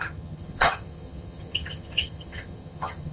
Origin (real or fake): fake